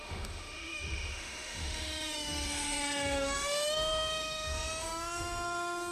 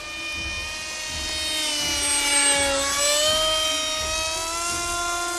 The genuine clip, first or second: second